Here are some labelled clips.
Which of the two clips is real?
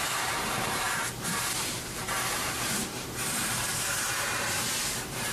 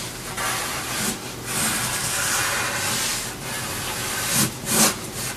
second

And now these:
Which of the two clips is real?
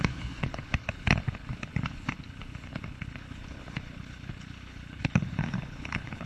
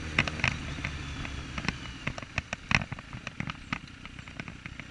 second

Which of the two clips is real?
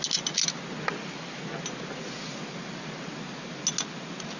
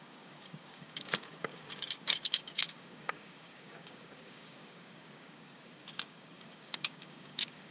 first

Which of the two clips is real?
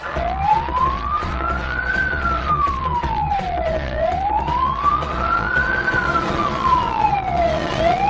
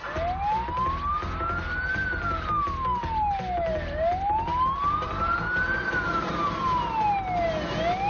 second